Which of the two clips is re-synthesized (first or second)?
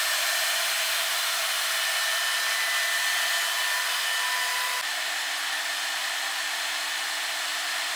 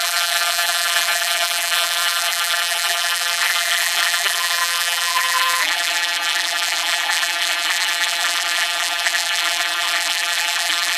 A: second